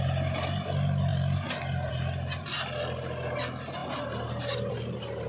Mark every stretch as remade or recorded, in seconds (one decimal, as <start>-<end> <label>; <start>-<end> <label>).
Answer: 0.0-5.3 recorded